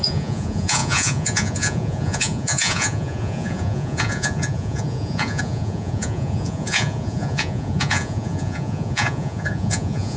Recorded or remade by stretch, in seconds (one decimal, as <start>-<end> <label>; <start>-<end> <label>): 0.0-10.2 remade